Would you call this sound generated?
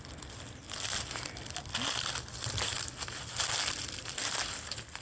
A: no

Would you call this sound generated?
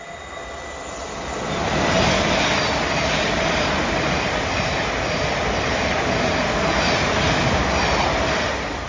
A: no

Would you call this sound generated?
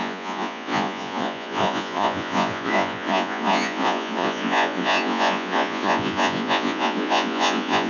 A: yes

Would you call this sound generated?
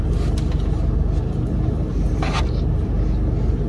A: no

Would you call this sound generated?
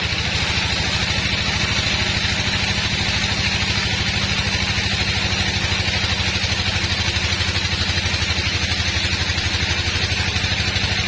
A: no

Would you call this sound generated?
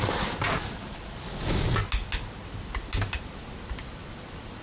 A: no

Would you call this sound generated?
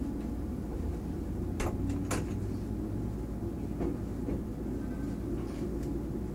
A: no